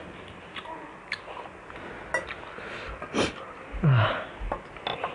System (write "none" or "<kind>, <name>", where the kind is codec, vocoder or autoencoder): none